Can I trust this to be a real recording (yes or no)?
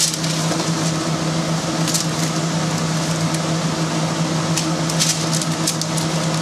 yes